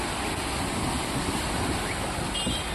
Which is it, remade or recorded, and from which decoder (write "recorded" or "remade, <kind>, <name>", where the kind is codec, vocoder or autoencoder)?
recorded